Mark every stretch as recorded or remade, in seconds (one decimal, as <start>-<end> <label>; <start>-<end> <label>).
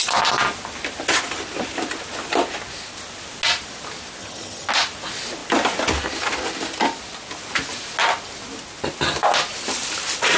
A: 0.0-4.2 recorded; 4.2-4.7 remade; 4.7-10.4 recorded